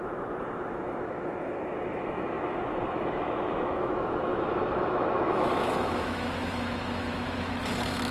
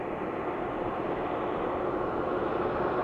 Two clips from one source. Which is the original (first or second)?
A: second